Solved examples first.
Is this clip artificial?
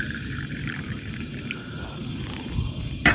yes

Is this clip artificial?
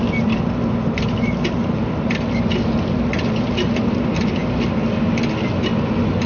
no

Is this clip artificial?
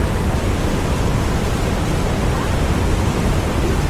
no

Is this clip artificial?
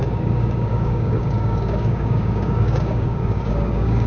yes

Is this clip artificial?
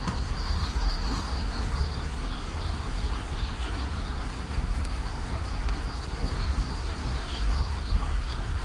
yes